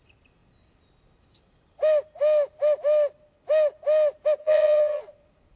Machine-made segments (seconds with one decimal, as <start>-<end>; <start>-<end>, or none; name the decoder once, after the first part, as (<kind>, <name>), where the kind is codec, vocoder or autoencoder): 4.4-5.0 (vocoder, HiFi-GAN)